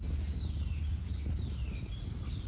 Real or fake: fake